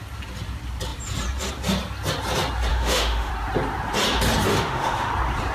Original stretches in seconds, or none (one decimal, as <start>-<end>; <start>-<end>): 0.0-2.7; 3.3-4.5; 5.1-5.5